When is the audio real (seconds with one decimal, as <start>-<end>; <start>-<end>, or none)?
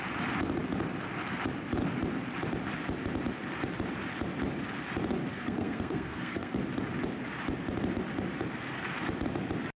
0.0-5.3; 6.6-9.8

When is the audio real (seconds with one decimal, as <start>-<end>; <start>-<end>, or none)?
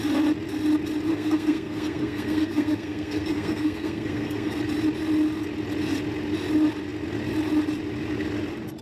0.0-1.1; 4.6-8.8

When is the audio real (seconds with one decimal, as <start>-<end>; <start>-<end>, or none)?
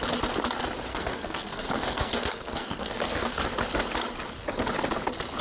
0.0-0.9; 3.4-5.4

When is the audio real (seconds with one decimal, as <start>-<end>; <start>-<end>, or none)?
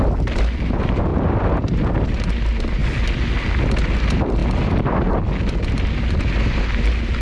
0.0-7.2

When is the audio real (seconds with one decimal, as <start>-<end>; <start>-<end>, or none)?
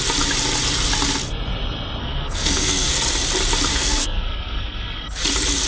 0.0-2.0; 2.9-3.7; 5.2-5.7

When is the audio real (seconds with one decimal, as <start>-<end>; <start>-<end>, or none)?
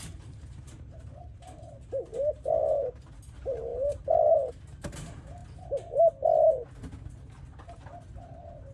0.0-8.7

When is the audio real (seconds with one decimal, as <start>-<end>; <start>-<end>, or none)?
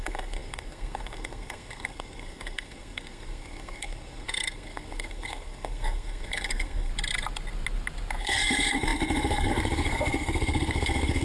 6.9-8.2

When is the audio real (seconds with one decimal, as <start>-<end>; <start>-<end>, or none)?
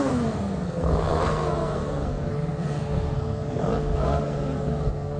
none